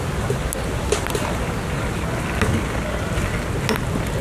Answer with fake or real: real